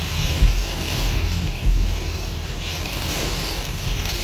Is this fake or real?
fake